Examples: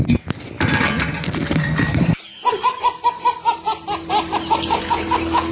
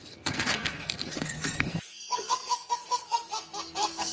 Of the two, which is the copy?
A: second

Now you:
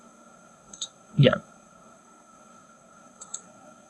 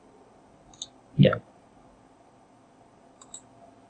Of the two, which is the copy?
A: first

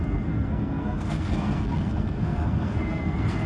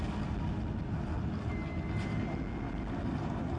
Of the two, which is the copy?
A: first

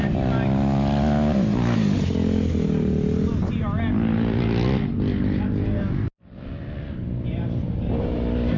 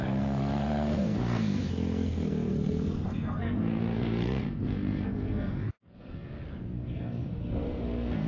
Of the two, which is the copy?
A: second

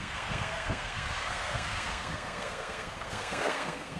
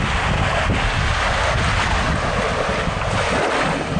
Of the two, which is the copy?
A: first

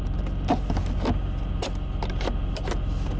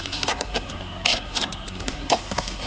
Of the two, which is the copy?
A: second